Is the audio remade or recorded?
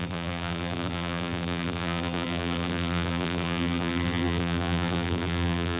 remade